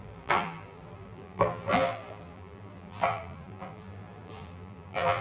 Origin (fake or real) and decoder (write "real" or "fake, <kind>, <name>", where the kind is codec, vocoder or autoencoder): fake, vocoder, BigVGAN v2